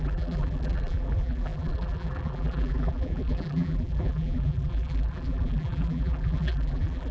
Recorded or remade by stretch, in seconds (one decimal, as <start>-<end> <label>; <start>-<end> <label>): 0.0-7.1 remade